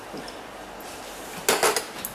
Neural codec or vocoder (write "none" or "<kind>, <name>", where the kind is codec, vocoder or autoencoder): none